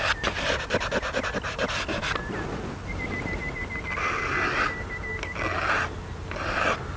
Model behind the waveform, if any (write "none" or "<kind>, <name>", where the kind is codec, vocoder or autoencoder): none